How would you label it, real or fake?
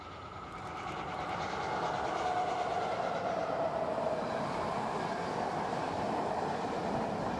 real